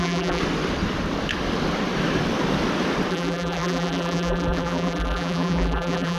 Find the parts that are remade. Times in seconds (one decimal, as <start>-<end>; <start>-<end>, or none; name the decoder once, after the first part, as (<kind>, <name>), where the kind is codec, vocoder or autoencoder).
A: 0.0-0.4 (vocoder, BigVGAN v2); 3.1-6.2